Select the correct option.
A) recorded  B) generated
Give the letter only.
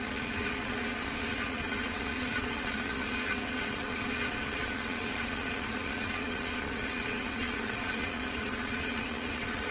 B